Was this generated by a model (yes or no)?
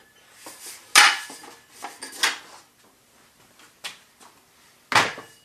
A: no